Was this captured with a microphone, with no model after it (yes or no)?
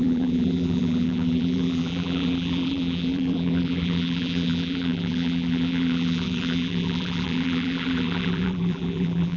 no